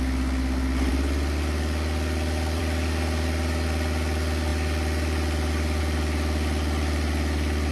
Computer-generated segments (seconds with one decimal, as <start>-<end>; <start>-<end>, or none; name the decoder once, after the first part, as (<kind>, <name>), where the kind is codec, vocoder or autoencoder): none